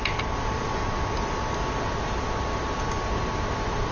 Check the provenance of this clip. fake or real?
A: real